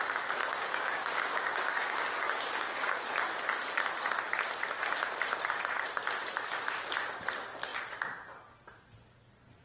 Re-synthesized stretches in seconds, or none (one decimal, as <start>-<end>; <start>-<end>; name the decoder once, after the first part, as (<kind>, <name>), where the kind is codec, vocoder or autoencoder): 0.4-3.0 (codec, DAC)

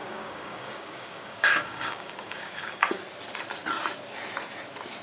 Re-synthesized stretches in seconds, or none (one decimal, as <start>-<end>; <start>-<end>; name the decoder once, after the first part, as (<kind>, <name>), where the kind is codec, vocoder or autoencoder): 0.0-3.0 (codec, DAC)

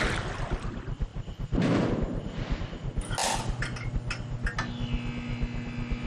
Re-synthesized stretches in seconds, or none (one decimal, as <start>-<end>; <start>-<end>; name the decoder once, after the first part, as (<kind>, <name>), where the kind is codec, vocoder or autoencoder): none